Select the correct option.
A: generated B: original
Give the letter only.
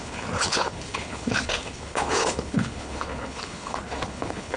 A